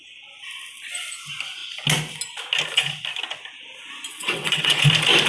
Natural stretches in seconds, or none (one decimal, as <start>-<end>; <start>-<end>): 0.0-4.1; 4.8-5.3